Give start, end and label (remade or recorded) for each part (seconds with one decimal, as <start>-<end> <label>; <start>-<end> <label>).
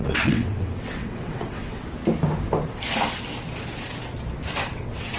0.0-1.8 remade; 1.8-4.7 recorded; 4.7-5.2 remade